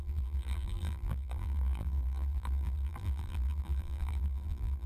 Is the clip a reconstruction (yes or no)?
yes